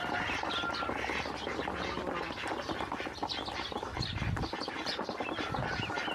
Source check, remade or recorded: recorded